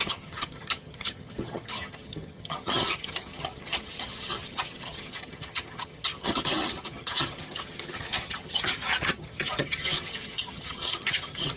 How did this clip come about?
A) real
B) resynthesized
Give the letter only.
B